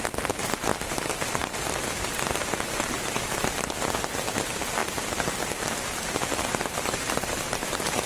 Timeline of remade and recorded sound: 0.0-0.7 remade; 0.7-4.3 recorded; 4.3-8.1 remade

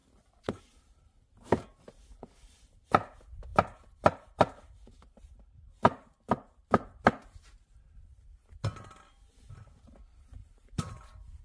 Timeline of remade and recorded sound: 0.0-3.5 recorded; 3.5-7.8 remade; 7.8-10.4 recorded; 10.4-11.4 remade

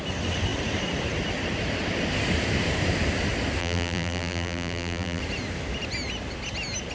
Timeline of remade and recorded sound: 0.0-3.6 recorded; 3.6-5.2 remade; 5.2-6.9 recorded